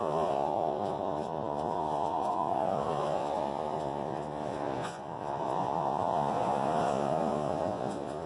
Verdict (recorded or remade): remade